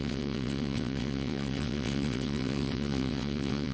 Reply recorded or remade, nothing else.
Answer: remade